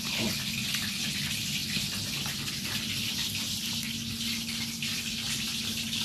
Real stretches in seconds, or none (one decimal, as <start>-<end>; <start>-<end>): 0.0-6.0